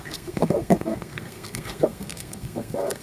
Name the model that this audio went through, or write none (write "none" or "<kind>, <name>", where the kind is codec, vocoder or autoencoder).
codec, SNAC